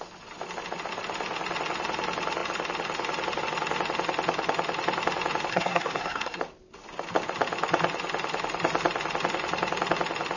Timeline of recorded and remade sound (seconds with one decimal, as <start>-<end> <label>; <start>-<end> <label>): 0.0-5.5 recorded; 5.5-6.4 remade; 6.4-10.4 recorded